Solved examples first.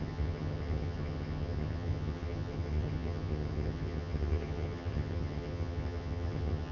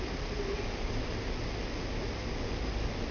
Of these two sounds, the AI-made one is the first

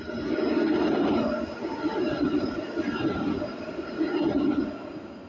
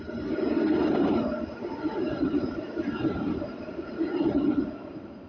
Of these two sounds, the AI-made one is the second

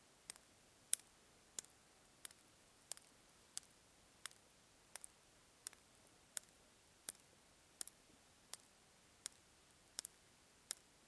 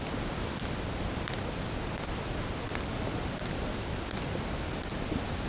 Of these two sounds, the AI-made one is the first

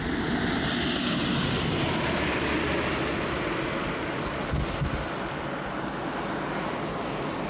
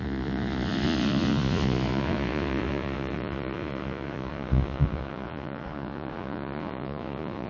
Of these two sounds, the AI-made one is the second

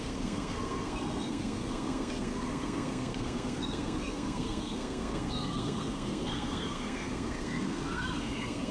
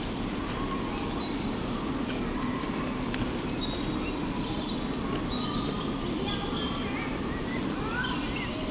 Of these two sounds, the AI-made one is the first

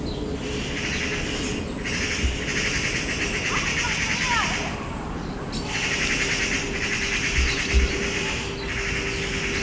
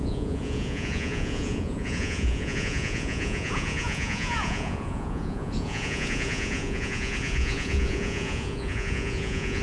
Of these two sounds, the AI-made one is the second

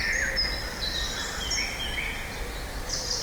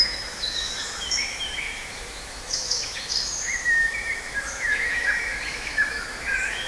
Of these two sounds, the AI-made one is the second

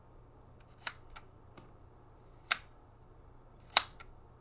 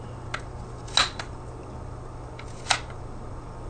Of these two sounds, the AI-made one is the first